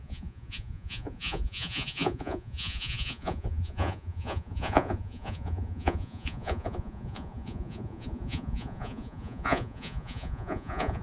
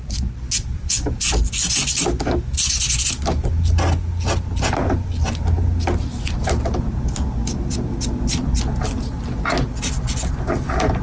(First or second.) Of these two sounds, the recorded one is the second